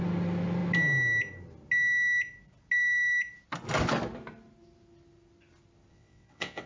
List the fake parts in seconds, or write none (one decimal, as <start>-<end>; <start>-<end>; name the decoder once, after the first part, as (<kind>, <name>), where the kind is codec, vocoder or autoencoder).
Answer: 5.9-6.7 (vocoder, WaveNeXt)